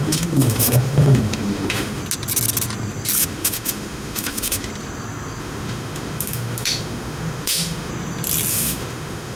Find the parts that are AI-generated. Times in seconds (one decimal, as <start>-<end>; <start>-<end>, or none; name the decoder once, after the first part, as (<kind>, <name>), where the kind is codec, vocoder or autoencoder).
0.0-2.0 (autoencoder, DAC-VAE); 3.2-4.7; 5.4-7.9; 8.5-9.4

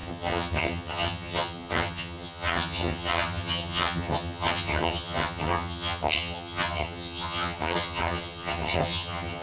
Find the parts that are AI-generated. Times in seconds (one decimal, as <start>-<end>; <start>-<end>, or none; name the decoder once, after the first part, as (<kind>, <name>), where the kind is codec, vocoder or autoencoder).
0.0-9.4 (vocoder, HiFi-GAN)

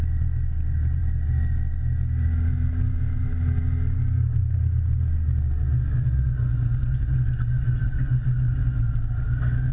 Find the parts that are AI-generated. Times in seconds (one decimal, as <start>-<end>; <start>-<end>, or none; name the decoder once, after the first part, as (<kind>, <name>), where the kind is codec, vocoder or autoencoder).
none